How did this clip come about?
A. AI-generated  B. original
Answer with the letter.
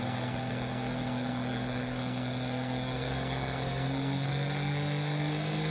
A